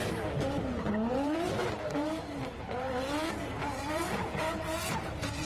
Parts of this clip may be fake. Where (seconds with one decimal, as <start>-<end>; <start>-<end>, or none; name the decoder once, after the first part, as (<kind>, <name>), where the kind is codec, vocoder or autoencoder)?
1.1-5.5 (vocoder, BigVGAN v2)